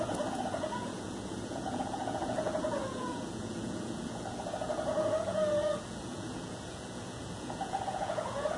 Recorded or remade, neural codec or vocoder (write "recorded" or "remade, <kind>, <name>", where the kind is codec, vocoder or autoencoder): remade, vocoder, Vocos